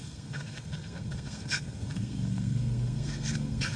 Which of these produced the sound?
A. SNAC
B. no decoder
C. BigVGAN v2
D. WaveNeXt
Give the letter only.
A